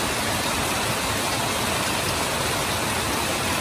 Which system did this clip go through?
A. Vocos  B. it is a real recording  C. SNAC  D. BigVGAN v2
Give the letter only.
B